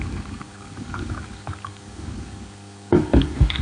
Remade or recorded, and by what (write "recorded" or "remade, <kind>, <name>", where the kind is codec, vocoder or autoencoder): remade, codec, DAC